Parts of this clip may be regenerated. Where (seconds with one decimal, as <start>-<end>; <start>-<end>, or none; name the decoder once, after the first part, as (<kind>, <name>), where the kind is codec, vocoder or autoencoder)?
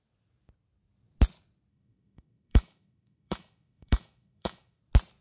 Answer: 1.7-4.8 (autoencoder, DAC-VAE)